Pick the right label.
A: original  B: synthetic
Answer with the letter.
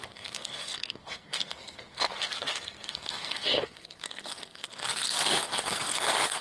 B